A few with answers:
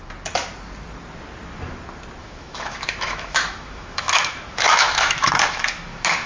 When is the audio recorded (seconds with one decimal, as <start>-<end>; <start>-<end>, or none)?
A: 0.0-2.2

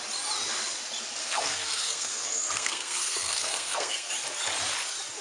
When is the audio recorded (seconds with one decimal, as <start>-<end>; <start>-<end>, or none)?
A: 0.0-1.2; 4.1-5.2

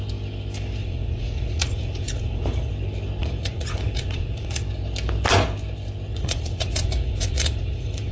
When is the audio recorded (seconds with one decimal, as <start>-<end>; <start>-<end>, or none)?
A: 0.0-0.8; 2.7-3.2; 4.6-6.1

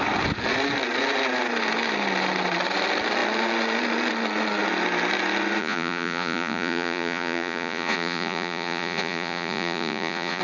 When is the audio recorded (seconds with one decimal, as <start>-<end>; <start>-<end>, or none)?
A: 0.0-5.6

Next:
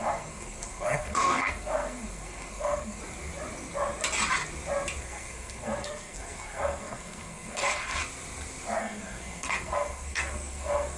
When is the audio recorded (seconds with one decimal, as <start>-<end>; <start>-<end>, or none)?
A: 3.0-5.0; 8.0-8.8